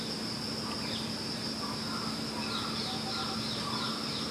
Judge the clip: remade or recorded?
recorded